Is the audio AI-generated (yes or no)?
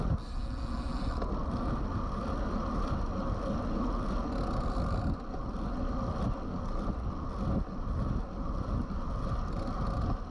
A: no